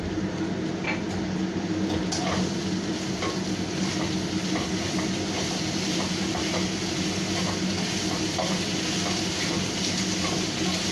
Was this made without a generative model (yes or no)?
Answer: yes